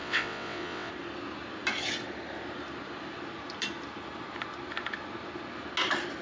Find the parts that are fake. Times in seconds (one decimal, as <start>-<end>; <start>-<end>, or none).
0.0-0.9